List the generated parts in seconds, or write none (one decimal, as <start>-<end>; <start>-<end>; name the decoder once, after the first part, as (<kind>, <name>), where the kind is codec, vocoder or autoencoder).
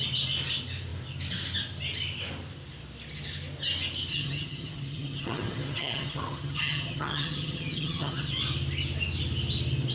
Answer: 4.1-8.3 (vocoder, HiFi-GAN)